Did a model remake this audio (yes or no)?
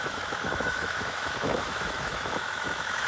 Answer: yes